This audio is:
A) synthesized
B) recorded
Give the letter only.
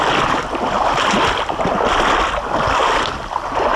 B